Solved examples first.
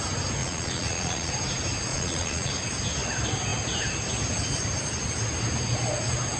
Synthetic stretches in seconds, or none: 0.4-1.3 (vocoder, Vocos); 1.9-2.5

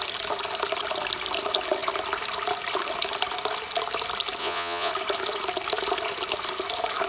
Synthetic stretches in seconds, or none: 4.4-4.9 (vocoder, Vocos)

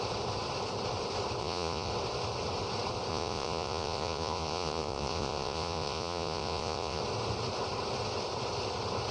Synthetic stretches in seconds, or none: 1.4-1.9 (vocoder, Vocos); 3.1-7.0

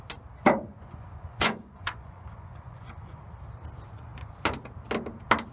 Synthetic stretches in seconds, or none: 0.7-3.2 (vocoder, Vocos)